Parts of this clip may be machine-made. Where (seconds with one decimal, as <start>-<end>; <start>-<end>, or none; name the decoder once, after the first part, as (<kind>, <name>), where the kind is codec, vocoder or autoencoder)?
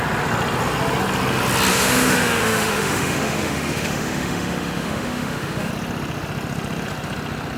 1.7-5.7 (autoencoder, DAC-VAE)